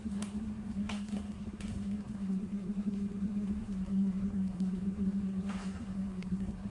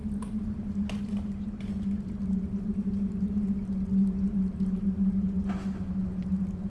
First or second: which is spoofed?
first